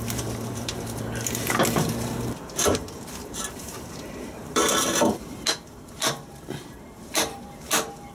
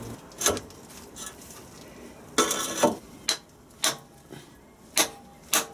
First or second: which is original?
second